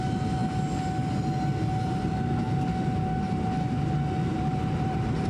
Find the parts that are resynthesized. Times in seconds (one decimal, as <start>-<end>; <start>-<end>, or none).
4.3-5.3